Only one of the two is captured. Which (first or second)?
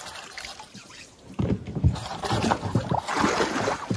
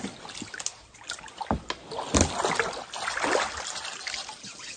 second